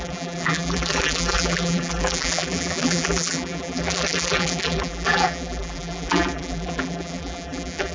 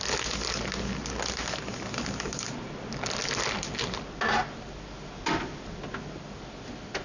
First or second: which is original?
second